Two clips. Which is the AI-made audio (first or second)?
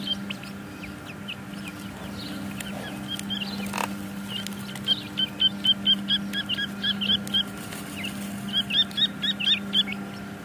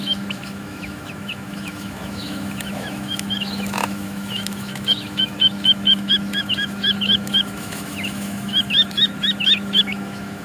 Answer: second